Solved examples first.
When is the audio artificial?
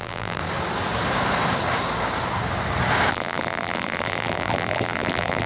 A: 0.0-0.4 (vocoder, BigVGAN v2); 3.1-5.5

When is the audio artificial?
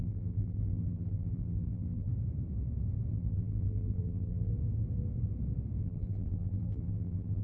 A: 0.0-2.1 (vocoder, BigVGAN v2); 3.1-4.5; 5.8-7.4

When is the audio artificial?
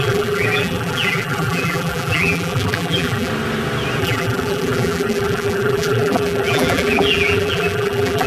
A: 0.0-3.3 (vocoder, BigVGAN v2); 4.0-8.3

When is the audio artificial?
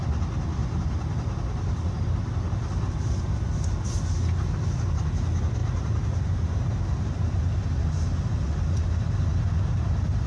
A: 5.6-7.8 (vocoder, BigVGAN v2)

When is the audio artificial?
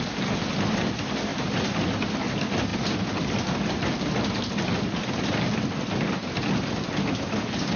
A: none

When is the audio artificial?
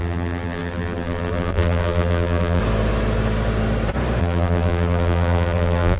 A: 0.0-2.6 (vocoder, BigVGAN v2); 4.2-6.0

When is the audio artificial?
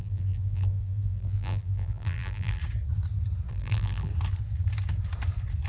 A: 0.0-2.6 (vocoder, BigVGAN v2); 3.5-4.1